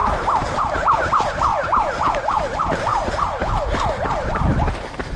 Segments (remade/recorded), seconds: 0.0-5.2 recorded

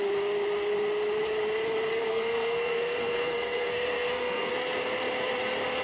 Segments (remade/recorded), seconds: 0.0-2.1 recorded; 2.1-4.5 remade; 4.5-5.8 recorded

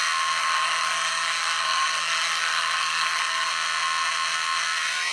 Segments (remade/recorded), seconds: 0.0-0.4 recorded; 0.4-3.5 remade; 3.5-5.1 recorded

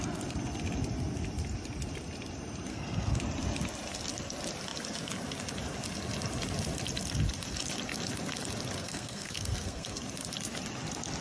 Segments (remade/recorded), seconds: 0.0-2.7 recorded; 2.7-3.2 remade; 3.2-8.8 recorded; 8.8-10.0 remade; 10.0-11.2 recorded

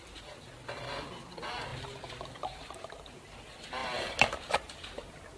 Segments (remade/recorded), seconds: 0.0-5.4 recorded